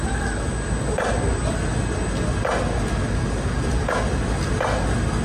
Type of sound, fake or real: real